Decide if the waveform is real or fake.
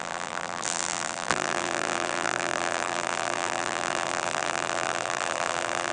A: fake